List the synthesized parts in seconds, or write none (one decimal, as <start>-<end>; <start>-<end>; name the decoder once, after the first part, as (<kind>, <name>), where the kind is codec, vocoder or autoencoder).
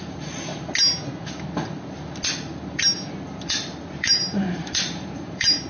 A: 0.0-0.5 (vocoder, BigVGAN v2); 3.9-5.7